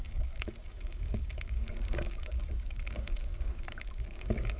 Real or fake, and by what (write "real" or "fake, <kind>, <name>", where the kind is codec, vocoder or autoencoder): fake, codec, DAC